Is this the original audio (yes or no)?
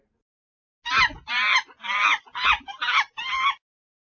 yes